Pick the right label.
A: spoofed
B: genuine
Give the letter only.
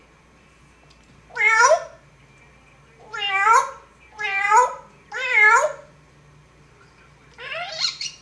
A